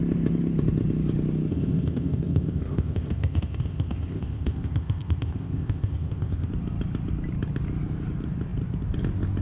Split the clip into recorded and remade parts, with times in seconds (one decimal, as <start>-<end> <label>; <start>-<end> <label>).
0.0-1.5 recorded; 1.5-6.5 remade; 6.5-9.4 recorded